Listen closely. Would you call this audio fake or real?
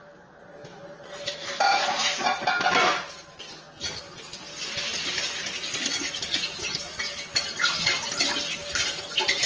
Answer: real